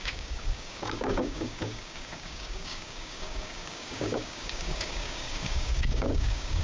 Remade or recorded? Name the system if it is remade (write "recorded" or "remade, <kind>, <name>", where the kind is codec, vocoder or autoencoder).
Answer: remade, codec, DAC